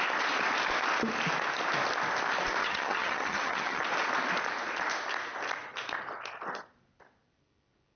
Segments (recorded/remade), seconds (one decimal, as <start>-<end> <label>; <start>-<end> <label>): 0.0-2.6 recorded; 2.6-3.8 remade; 3.8-8.0 recorded